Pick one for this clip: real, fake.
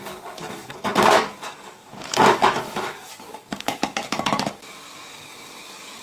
fake